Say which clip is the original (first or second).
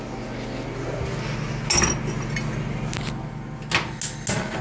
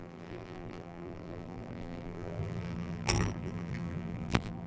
first